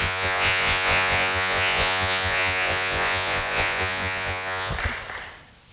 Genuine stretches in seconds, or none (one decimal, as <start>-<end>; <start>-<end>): 4.7-5.7